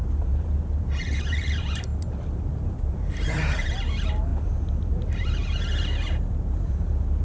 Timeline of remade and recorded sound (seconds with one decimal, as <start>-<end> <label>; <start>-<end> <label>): 0.0-1.9 remade; 1.9-2.7 recorded; 2.7-4.3 remade; 4.3-4.9 recorded; 4.9-5.4 remade; 5.4-6.3 recorded; 6.3-7.2 remade